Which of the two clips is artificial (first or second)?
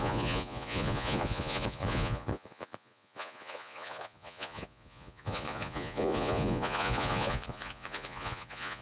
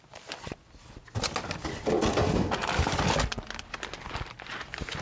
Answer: first